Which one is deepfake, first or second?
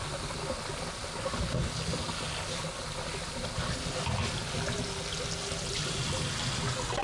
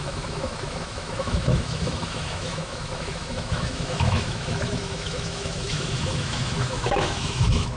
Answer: second